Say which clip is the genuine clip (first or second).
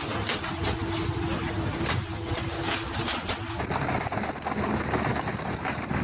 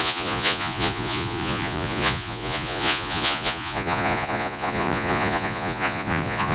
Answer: first